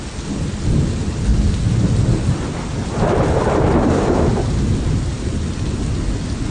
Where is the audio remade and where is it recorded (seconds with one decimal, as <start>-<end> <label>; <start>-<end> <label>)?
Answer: 0.0-6.5 recorded